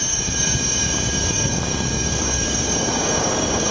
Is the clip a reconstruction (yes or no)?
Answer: yes